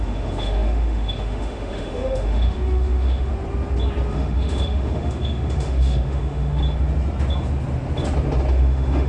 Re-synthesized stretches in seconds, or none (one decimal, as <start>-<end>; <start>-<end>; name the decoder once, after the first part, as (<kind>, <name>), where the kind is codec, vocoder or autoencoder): 0.0-3.3 (autoencoder, DAC-VAE); 4.1-6.6; 8.5-9.1